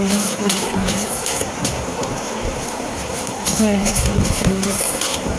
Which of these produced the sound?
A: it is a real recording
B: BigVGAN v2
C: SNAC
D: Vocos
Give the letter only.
C